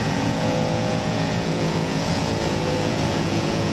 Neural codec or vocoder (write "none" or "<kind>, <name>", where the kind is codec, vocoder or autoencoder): vocoder, Vocos